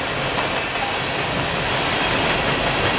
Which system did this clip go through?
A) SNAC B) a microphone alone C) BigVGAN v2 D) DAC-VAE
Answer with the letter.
B